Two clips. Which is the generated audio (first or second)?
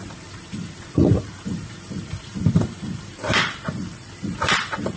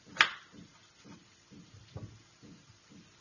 first